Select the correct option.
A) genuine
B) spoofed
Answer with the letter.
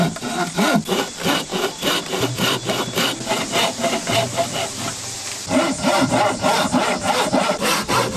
B